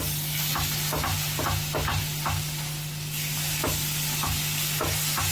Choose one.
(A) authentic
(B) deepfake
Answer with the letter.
A